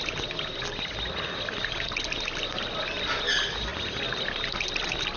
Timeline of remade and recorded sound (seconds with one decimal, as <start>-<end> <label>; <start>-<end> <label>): 0.0-5.2 recorded